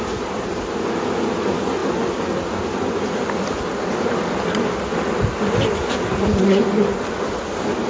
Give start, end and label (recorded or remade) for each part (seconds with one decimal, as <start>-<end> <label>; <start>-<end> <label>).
0.0-7.9 recorded

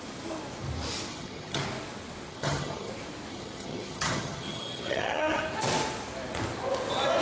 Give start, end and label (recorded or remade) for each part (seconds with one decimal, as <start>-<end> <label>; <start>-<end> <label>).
0.0-1.1 recorded; 1.1-1.6 remade; 1.6-2.3 recorded; 2.3-2.9 remade; 2.9-3.3 recorded; 3.3-5.4 remade; 5.4-7.2 recorded

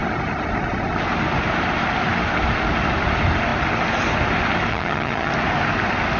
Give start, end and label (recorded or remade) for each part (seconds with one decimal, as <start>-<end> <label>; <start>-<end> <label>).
0.0-4.7 recorded; 4.7-5.3 remade; 5.3-6.2 recorded

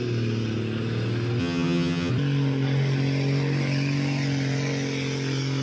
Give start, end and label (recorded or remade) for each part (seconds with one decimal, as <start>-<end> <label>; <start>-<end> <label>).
0.0-1.4 recorded; 1.4-2.1 remade; 2.1-5.6 recorded

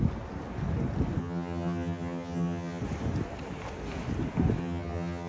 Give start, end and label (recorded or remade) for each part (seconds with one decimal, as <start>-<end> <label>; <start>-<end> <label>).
0.0-1.2 recorded; 1.2-2.8 remade; 2.8-4.6 recorded; 4.6-5.3 remade